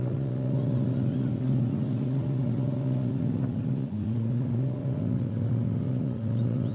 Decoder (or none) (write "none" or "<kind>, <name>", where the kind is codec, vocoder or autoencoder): vocoder, Vocos